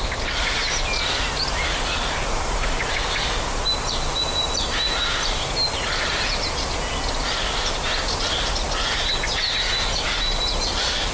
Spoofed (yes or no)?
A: no